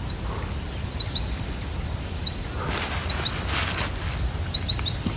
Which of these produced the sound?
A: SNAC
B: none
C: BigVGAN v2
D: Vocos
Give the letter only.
B